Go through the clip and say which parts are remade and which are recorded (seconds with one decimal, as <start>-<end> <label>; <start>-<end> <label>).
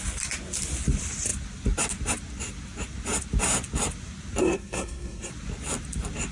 0.0-4.4 recorded; 4.4-5.3 remade; 5.3-6.3 recorded